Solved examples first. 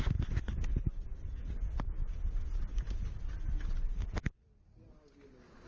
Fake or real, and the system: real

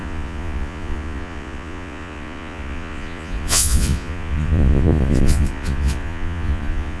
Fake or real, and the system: fake, vocoder, Vocos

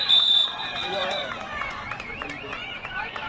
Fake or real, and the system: fake, vocoder, Vocos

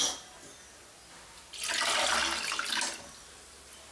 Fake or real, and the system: real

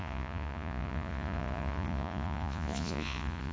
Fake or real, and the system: fake, vocoder, Vocos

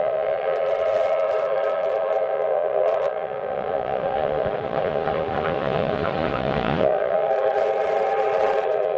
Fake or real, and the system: fake, vocoder, Vocos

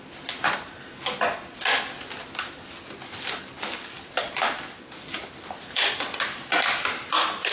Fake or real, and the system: real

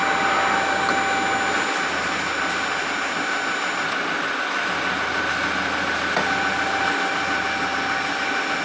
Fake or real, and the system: real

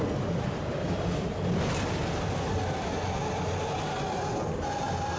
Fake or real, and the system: real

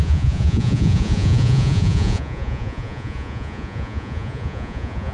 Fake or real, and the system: fake, vocoder, Vocos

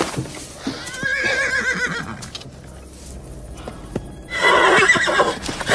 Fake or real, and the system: real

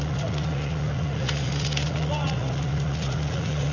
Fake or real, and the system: fake, vocoder, Vocos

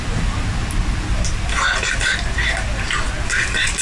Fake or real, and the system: real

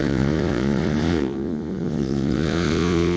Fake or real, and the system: fake, vocoder, Vocos